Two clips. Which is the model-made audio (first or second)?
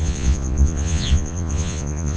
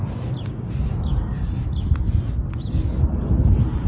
first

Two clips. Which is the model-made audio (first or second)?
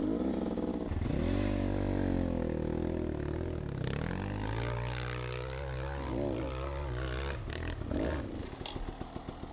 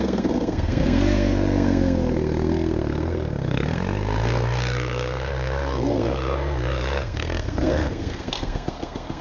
second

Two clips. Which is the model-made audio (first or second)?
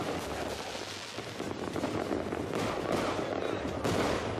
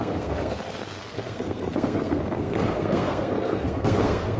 second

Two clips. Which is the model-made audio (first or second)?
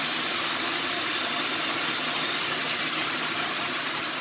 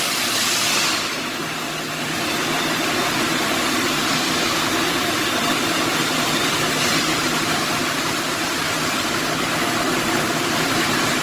second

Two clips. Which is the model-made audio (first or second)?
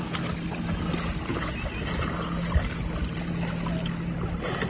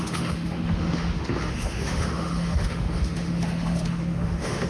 second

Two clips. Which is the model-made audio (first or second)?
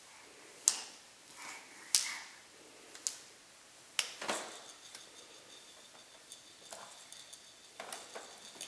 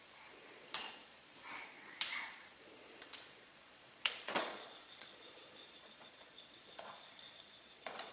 second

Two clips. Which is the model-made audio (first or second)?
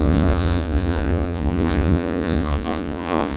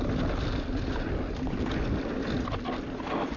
first